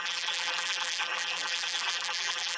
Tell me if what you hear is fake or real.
fake